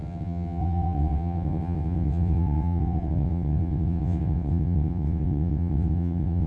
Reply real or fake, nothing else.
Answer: fake